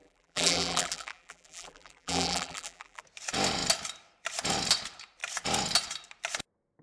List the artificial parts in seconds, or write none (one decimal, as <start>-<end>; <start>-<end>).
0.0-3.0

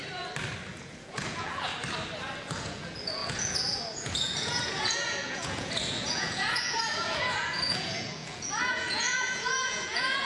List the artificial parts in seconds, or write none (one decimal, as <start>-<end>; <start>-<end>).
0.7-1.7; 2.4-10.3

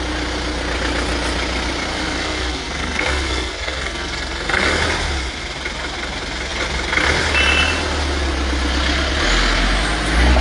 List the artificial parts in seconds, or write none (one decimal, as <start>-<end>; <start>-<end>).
1.9-4.8